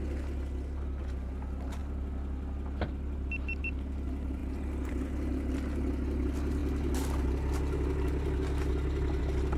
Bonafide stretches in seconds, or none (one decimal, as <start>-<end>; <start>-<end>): 0.0-9.6